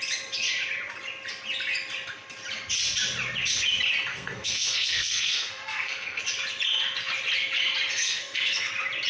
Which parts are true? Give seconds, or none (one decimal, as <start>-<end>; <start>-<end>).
0.0-4.1; 6.2-7.9; 8.7-9.1